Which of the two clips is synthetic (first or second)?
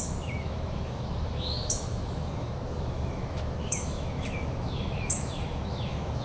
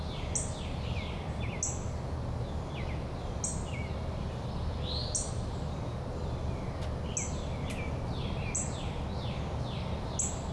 first